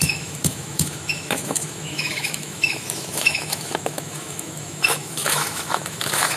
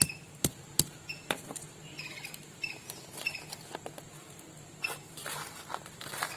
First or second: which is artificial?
first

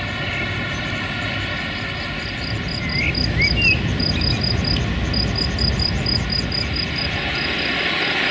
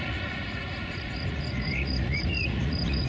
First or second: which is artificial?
second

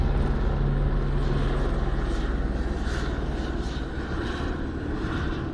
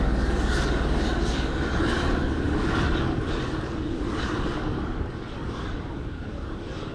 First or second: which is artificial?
second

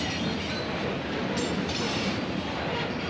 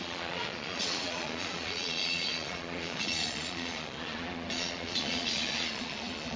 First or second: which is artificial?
second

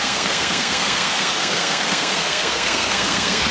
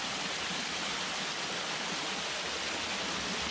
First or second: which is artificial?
first